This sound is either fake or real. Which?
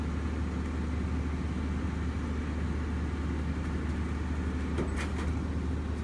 real